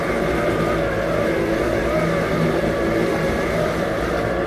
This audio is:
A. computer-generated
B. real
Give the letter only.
B